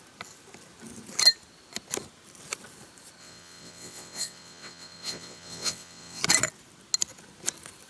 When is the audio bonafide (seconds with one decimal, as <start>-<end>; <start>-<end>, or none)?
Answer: 0.0-3.2; 6.2-7.9

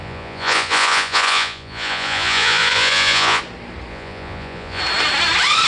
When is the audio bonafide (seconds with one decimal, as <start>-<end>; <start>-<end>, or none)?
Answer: 3.4-3.9; 4.8-5.7

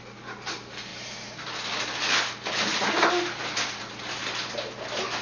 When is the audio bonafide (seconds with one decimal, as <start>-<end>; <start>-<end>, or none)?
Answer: 0.0-5.2

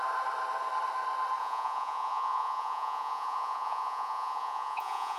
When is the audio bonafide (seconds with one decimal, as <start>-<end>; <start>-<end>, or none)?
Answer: 0.0-1.4

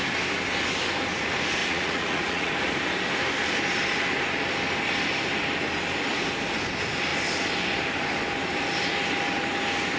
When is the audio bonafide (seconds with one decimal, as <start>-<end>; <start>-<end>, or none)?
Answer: 0.0-1.6; 2.5-10.0

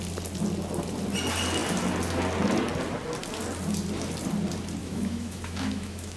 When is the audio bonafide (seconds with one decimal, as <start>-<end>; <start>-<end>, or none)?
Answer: 0.0-4.8

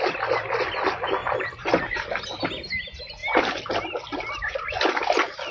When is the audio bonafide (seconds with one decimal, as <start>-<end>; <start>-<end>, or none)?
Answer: 0.0-1.2; 2.4-3.2; 3.7-5.5